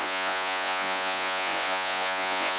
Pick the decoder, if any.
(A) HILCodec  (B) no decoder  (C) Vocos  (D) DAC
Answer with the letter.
C